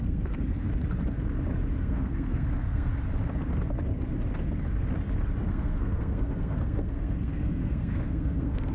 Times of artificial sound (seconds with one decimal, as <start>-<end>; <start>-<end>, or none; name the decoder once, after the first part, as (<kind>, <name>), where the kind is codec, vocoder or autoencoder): 0.0-0.7 (codec, SNAC); 1.8-2.9; 5.5-8.7